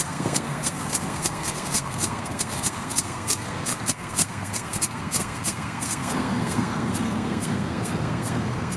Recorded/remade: remade